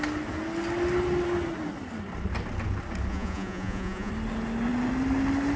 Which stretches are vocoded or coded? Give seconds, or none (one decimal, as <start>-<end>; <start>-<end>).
3.1-4.1